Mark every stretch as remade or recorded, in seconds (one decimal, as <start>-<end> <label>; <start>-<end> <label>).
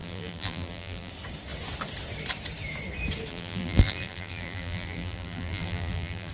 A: 0.0-1.1 remade; 1.1-3.3 recorded; 3.3-6.3 remade